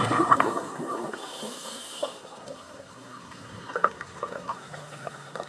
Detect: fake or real fake